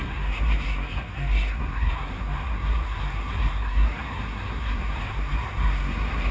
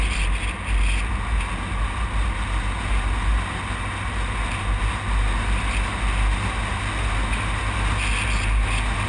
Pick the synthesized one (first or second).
first